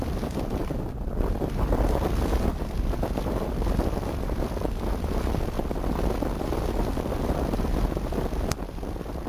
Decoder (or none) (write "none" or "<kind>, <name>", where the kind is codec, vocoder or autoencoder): none